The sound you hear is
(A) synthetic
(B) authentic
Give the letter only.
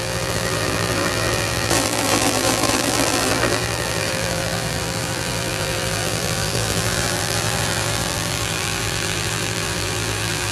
A